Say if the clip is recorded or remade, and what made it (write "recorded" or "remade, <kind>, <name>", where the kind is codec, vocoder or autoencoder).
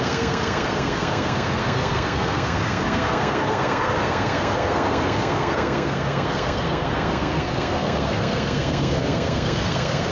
remade, codec, SNAC